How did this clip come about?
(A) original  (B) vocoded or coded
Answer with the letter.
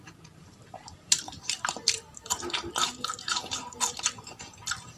B